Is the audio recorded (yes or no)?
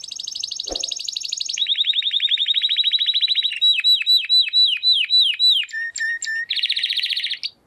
yes